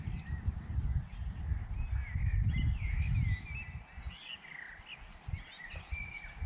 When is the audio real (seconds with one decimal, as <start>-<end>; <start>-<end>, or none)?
0.0-6.5